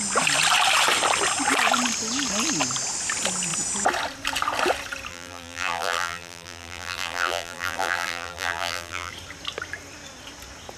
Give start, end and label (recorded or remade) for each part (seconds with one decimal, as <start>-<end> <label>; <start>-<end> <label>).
0.0-5.1 recorded; 5.1-9.1 remade; 9.1-10.8 recorded